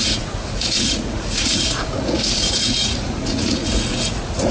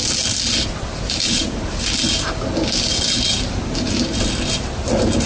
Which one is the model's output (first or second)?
first